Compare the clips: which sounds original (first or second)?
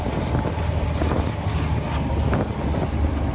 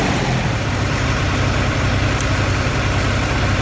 first